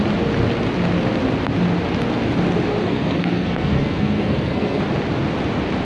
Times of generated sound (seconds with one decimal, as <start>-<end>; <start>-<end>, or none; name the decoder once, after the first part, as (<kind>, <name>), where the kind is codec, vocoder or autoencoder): 2.8-4.8 (codec, SNAC)